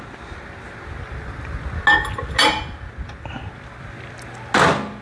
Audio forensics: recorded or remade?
recorded